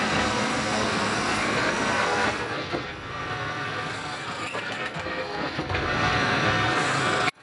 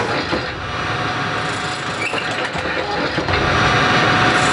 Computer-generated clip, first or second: first